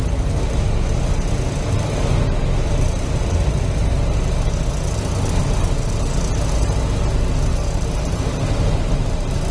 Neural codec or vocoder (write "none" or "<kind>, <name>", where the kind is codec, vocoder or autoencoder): none